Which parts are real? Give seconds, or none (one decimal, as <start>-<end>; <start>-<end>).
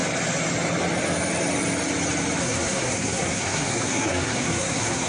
0.0-2.4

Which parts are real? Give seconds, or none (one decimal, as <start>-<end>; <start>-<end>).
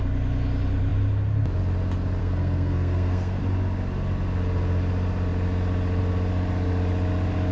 0.0-2.2; 3.4-7.5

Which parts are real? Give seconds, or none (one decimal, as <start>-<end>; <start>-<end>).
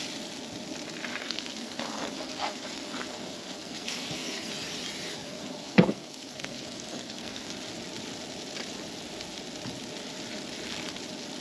0.0-1.2; 4.5-5.1; 7.5-11.4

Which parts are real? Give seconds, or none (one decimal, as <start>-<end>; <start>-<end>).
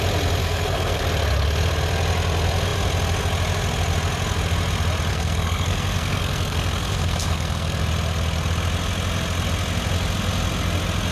0.0-0.4; 1.0-5.1; 7.8-11.1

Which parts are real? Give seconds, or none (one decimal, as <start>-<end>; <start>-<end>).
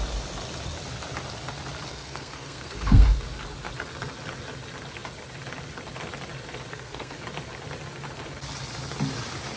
0.0-1.9; 3.2-6.7; 7.2-9.6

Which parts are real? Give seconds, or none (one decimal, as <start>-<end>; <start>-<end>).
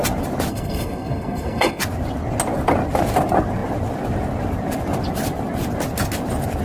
0.0-0.5; 1.8-6.6